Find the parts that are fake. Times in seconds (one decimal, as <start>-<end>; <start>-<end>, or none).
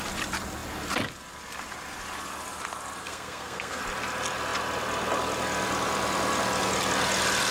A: 3.0-3.8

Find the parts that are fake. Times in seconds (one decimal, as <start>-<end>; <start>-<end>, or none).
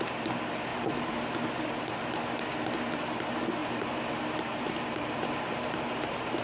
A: 0.7-1.3; 3.6-5.4